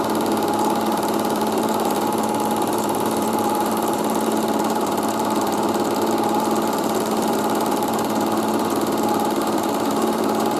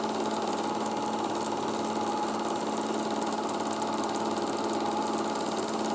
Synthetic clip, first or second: first